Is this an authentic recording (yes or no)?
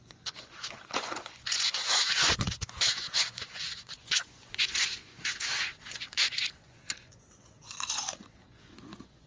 no